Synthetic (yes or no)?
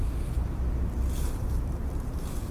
no